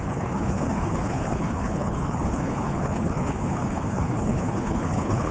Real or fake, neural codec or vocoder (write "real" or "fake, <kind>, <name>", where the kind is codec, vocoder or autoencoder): fake, codec, HILCodec